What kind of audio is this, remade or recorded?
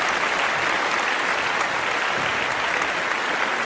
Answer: recorded